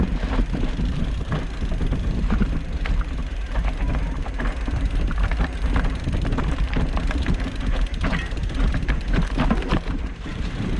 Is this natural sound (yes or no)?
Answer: no